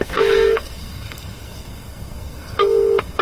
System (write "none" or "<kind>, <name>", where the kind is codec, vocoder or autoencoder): codec, SNAC